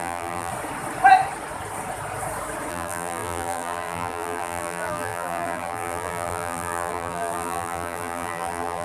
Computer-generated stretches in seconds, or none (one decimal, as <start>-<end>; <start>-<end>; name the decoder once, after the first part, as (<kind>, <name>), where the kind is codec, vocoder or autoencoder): 0.0-0.5 (vocoder, BigVGAN v2); 2.7-8.8